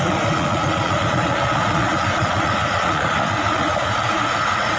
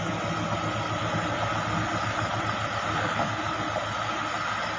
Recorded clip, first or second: second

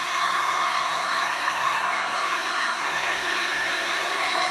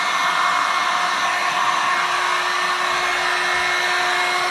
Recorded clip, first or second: second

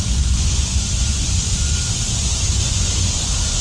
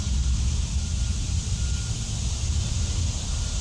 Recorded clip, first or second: second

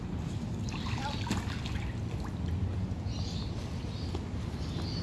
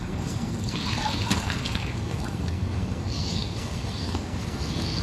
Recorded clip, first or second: first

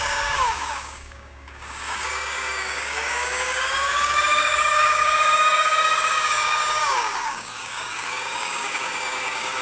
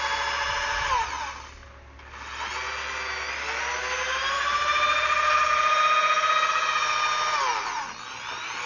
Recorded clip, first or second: second